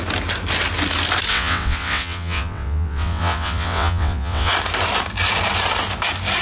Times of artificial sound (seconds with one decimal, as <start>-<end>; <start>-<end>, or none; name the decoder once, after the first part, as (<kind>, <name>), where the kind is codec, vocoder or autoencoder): 1.3-4.5 (vocoder, WaveNeXt)